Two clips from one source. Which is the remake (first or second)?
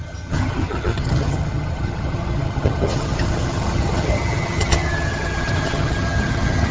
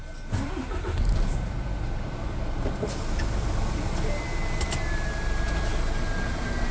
first